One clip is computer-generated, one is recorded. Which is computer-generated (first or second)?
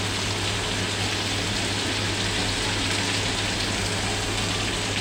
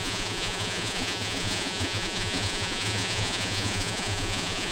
second